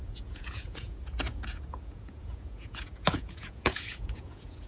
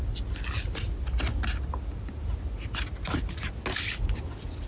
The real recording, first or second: second